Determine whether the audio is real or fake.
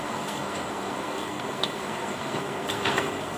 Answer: fake